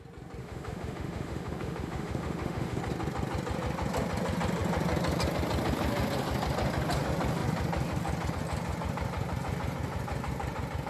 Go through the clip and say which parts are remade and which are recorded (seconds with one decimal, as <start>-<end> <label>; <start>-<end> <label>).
0.0-0.4 recorded; 0.4-2.8 remade; 2.8-10.9 recorded